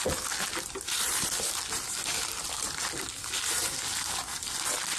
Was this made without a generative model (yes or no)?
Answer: yes